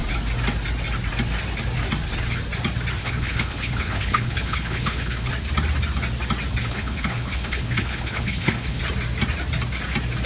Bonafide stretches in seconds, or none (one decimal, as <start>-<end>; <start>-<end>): 0.0-3.0; 5.3-6.6; 8.8-10.3